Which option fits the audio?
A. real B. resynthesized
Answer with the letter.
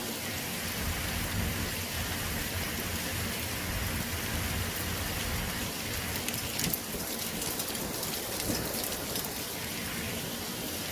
A